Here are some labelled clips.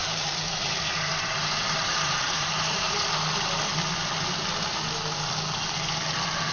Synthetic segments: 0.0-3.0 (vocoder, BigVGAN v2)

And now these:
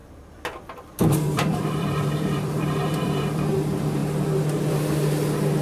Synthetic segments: 0.0-3.4 (vocoder, BigVGAN v2)

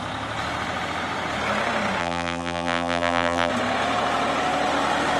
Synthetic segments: 2.0-3.5 (vocoder, BigVGAN v2)

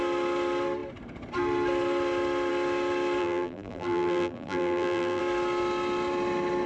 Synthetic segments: 3.2-5.2 (vocoder, BigVGAN v2)

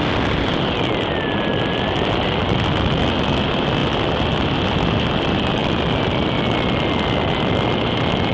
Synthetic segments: 5.6-6.4 (vocoder, BigVGAN v2)